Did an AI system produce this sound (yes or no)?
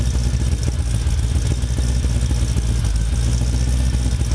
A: no